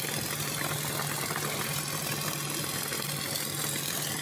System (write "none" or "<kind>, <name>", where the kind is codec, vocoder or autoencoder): none